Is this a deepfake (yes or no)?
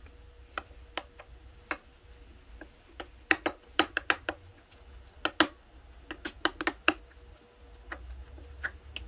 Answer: no